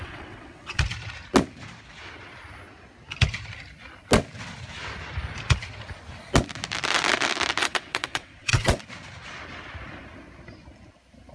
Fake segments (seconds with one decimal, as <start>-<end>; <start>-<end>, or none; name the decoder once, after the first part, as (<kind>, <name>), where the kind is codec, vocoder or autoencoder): 0.0-0.8 (vocoder, WaveNeXt); 7.6-8.8

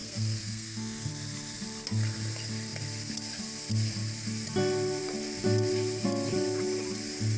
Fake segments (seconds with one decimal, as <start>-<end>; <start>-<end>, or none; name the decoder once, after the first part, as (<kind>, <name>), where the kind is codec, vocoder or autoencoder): 0.0-1.1 (codec, SNAC)

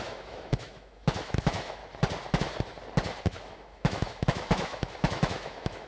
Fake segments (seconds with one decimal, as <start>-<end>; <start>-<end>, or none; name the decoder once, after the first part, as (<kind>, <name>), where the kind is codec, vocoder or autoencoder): 0.0-1.8 (autoencoder, DAC-VAE); 3.2-5.9

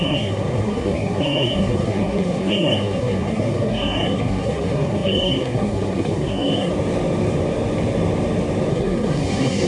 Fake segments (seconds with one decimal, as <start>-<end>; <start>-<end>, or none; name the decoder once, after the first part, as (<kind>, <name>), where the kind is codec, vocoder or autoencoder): 0.0-6.7 (codec, SNAC); 8.7-9.7

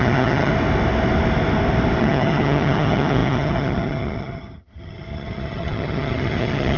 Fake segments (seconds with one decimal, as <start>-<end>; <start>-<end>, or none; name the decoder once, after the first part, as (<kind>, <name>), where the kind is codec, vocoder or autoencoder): 0.0-0.5 (vocoder, HiFi-GAN); 2.0-6.8

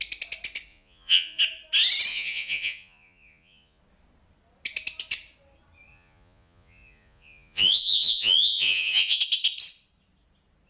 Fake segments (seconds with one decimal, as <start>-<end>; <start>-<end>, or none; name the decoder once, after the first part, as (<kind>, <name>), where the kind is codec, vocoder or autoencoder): 0.7-1.4 (vocoder, Vocos); 2.1-3.8; 5.9-9.2

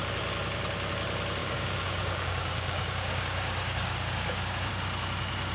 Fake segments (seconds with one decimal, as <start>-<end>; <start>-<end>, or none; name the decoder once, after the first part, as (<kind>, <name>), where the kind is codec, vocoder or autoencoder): 1.4-4.7 (codec, DAC)

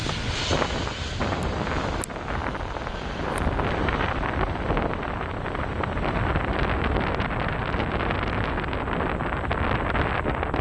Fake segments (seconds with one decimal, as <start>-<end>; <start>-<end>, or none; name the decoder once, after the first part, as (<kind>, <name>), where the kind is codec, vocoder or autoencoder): 2.4-6.4 (vocoder, BigVGAN v2)